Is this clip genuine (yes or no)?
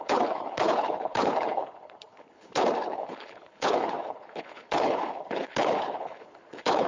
no